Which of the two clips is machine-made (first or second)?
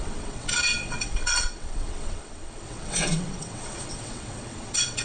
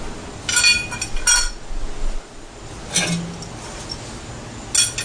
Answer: first